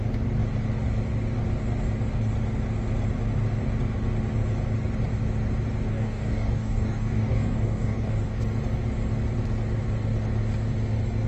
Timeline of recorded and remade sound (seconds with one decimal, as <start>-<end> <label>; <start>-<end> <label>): 0.0-5.9 recorded; 5.9-8.4 remade; 8.4-11.3 recorded